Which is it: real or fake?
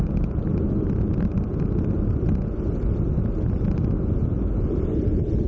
real